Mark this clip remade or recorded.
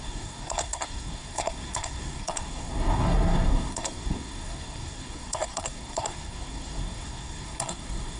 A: remade